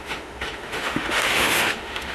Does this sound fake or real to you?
fake